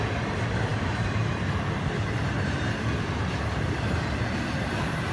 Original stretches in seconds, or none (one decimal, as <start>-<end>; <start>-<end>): 0.0-5.1